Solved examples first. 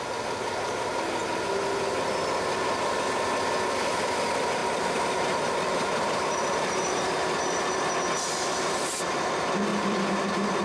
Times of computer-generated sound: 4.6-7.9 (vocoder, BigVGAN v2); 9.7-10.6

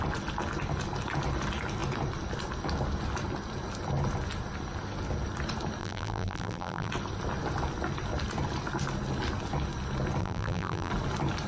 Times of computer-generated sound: 5.8-6.9 (vocoder, BigVGAN v2); 10.2-10.9